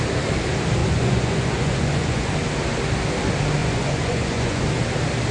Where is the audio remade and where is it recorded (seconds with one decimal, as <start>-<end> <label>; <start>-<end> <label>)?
0.0-0.8 recorded; 0.8-2.3 remade; 2.3-3.6 recorded; 3.6-4.6 remade; 4.6-5.3 recorded